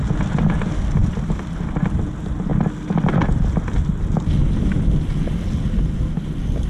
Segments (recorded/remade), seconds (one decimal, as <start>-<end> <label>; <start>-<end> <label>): 0.0-6.7 recorded